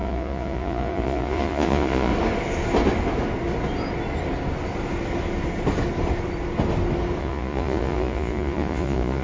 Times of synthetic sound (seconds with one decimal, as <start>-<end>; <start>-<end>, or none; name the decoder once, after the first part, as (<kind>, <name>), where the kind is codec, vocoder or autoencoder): 0.0-2.1 (vocoder, Vocos); 7.2-9.2